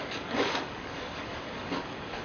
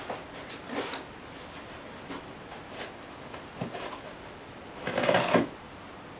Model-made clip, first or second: first